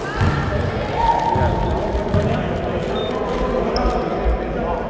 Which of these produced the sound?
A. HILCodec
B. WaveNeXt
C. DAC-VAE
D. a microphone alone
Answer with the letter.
D